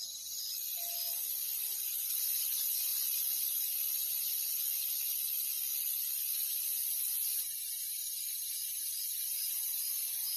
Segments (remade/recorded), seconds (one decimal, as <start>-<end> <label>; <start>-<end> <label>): 0.0-10.4 recorded